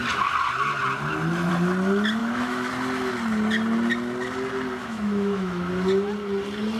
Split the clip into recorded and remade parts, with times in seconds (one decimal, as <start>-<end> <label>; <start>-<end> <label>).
0.0-2.2 recorded; 2.2-2.7 remade; 2.7-4.8 recorded; 4.8-5.7 remade; 5.7-6.8 recorded